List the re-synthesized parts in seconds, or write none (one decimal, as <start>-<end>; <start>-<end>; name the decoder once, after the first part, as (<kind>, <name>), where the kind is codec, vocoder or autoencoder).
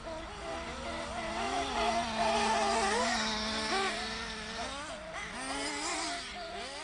none